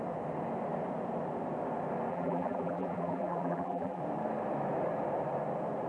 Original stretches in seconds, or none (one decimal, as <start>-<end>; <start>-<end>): 0.0-2.1; 4.0-5.9